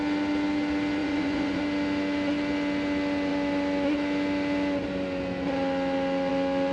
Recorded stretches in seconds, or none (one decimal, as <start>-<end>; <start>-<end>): 0.0-1.0; 1.6-6.7